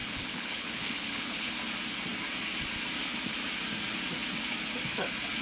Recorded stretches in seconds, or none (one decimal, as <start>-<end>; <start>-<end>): 1.5-5.4